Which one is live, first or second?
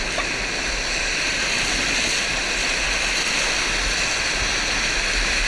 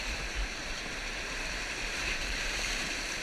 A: first